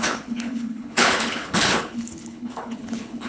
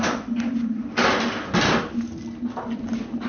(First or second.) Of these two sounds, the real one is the second